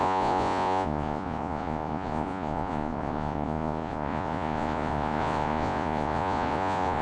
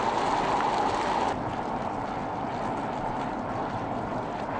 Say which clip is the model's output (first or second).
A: first